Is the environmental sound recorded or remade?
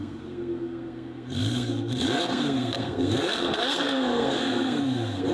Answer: remade